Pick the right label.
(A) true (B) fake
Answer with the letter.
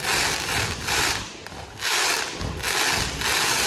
A